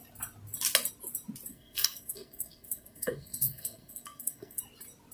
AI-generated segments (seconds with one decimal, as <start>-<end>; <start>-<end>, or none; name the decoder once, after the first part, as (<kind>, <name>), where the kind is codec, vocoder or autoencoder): 1.5-4.6 (codec, SNAC)